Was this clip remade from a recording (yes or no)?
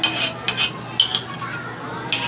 no